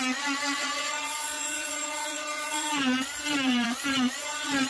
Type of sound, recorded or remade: remade